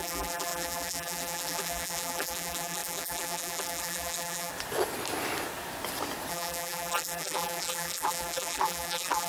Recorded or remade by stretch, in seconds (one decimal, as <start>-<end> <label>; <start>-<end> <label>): 0.0-4.5 remade; 4.5-6.3 recorded; 6.3-9.3 remade